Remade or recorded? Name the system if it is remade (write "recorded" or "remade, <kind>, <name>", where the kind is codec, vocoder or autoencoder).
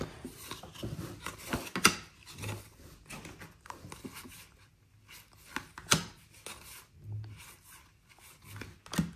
recorded